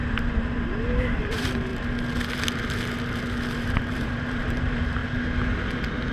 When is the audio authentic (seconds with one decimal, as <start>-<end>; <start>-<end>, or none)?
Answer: 1.7-3.6; 5.0-6.1